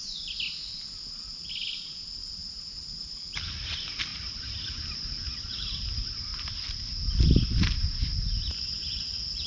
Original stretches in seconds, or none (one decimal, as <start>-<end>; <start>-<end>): 0.0-2.2; 3.5-4.1; 4.6-6.3; 7.1-9.5